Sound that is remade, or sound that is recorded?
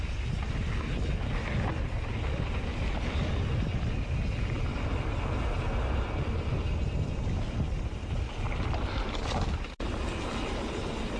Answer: recorded